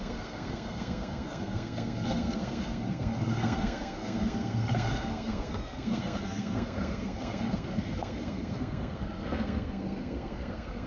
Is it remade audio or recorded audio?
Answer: remade